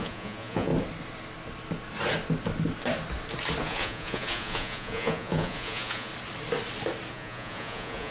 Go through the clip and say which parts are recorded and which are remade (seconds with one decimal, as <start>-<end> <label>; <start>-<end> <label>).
0.0-0.7 remade; 0.7-3.6 recorded; 3.6-6.1 remade; 6.1-7.1 recorded; 7.1-8.1 remade